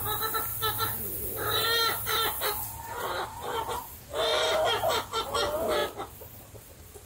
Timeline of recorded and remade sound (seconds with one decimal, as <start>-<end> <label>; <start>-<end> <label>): 0.0-7.1 recorded